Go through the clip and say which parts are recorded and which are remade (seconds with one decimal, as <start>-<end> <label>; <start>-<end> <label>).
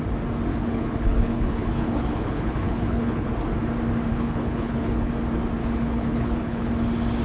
0.0-0.5 recorded; 0.5-3.3 remade; 3.3-4.1 recorded; 4.1-5.1 remade; 5.1-5.6 recorded; 5.6-6.7 remade; 6.7-7.2 recorded